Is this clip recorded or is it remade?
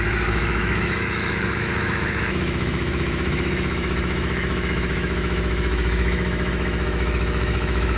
remade